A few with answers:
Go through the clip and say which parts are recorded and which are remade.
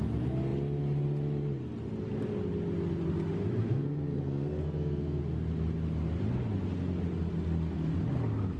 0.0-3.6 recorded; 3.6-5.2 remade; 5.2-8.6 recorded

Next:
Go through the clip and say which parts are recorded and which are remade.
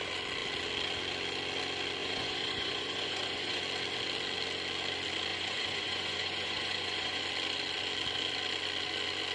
0.0-2.0 recorded; 2.0-3.6 remade; 3.6-5.3 recorded; 5.3-7.2 remade; 7.2-9.3 recorded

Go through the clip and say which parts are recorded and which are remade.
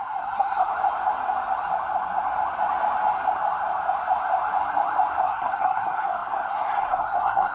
0.0-0.7 remade; 0.7-5.2 recorded; 5.2-7.5 remade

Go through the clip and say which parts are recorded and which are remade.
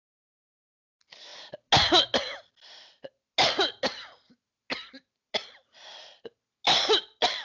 0.0-7.4 recorded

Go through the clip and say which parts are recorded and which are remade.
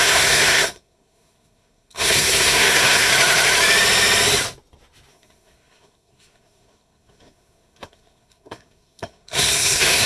0.0-3.1 remade; 3.1-5.1 recorded; 5.1-10.1 remade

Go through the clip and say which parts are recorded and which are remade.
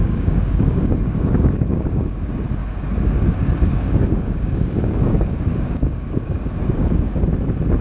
0.0-2.2 remade; 2.2-2.6 recorded; 2.6-7.2 remade; 7.2-7.8 recorded